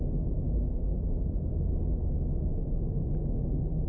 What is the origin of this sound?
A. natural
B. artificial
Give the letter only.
A